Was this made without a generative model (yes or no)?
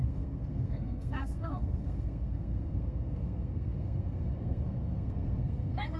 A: no